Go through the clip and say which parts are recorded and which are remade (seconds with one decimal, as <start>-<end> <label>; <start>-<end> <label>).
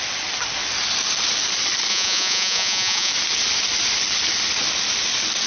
0.0-1.9 recorded; 1.9-3.1 remade; 3.1-5.5 recorded